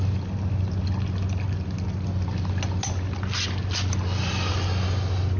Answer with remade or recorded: recorded